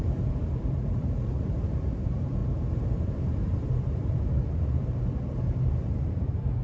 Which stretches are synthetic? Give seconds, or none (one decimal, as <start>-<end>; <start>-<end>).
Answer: 0.0-6.6